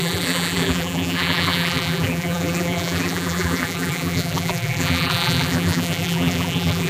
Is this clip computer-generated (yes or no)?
yes